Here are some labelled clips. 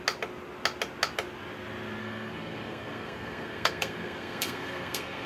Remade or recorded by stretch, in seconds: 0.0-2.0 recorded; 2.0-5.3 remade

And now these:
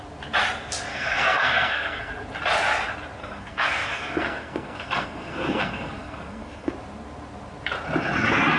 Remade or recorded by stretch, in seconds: 0.0-0.9 recorded; 0.9-2.1 remade; 2.1-3.2 recorded; 3.2-6.7 remade; 6.7-8.6 recorded

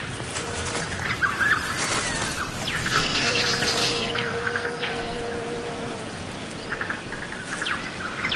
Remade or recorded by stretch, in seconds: 0.0-2.8 recorded; 2.8-3.4 remade; 3.4-3.8 recorded; 3.8-5.2 remade; 5.2-8.4 recorded